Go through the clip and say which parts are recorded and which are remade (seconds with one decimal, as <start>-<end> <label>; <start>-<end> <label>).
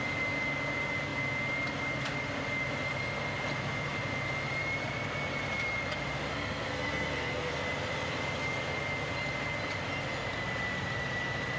0.0-6.3 recorded; 6.3-7.5 remade; 7.5-11.6 recorded